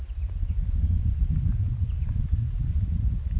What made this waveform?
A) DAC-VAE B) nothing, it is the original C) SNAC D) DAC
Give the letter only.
B